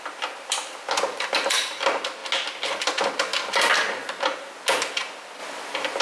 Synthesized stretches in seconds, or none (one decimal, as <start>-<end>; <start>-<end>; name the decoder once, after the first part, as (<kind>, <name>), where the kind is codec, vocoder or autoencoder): none